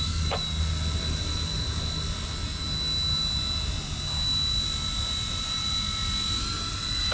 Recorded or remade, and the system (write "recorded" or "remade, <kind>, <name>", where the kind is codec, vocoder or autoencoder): recorded